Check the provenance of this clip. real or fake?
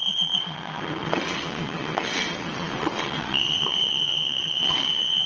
fake